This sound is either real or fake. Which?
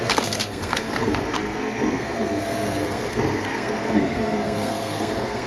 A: fake